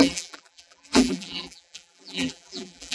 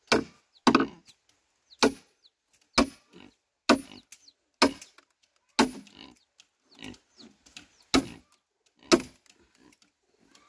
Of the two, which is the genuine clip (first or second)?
second